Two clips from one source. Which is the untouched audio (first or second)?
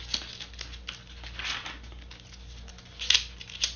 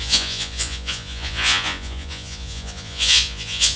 first